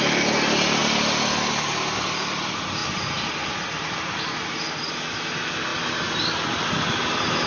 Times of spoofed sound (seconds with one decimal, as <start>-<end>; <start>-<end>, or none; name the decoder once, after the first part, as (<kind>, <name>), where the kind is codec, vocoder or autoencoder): none